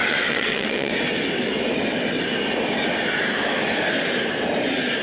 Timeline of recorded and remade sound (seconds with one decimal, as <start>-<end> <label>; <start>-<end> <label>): 0.0-0.9 remade; 0.9-5.0 recorded